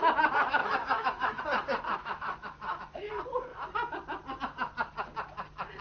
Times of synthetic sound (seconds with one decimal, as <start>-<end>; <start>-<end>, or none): 0.6-1.4; 2.0-3.1